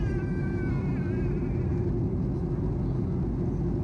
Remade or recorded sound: recorded